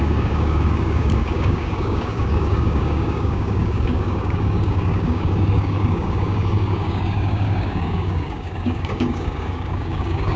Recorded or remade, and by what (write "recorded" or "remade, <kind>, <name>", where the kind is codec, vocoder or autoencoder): remade, codec, DAC